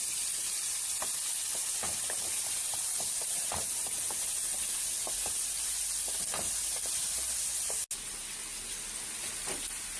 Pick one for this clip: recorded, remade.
recorded